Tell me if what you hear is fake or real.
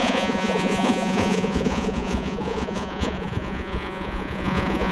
fake